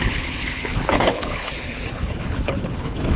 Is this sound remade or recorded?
remade